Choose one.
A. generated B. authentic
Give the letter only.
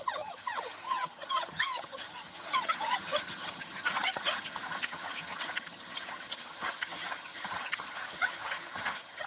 A